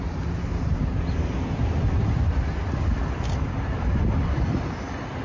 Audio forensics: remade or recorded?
recorded